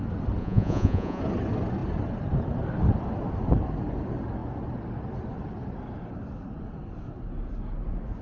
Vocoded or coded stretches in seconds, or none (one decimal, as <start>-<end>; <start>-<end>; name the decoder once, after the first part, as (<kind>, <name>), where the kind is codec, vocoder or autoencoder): 0.4-1.2 (vocoder, Vocos)